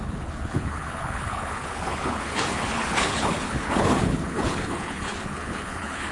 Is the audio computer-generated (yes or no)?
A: yes